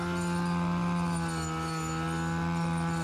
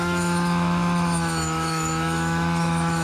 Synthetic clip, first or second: second